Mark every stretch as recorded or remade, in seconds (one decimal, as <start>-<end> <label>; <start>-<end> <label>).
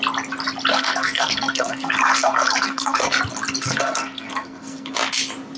0.0-0.7 recorded; 0.7-3.2 remade; 3.2-3.6 recorded; 3.6-4.9 remade; 4.9-5.6 recorded